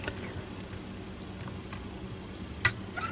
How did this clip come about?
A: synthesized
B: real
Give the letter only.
B